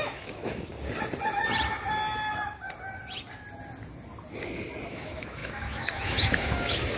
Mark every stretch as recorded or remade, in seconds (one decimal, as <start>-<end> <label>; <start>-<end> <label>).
0.0-0.7 remade; 0.7-4.9 recorded; 4.9-7.0 remade